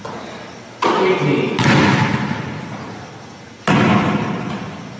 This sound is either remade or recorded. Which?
recorded